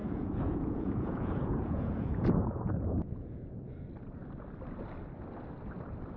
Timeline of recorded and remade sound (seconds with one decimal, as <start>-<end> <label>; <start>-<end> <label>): 0.0-3.7 remade; 3.7-6.2 recorded